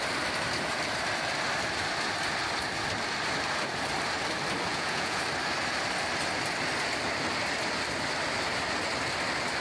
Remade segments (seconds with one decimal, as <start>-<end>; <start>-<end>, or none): 4.7-5.2